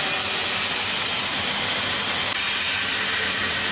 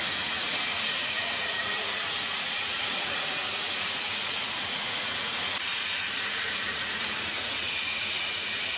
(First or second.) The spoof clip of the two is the second